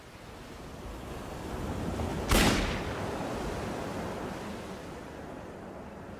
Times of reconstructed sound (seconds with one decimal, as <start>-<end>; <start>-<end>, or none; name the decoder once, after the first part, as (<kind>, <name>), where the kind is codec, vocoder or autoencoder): 0.9-1.5 (codec, DAC)